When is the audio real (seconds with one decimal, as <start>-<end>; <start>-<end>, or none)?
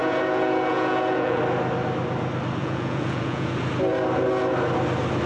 1.4-2.6; 3.5-5.3